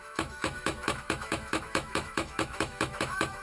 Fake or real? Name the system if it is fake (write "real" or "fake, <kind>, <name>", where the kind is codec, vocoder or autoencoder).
fake, autoencoder, DAC-VAE